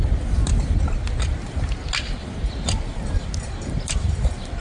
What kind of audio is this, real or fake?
real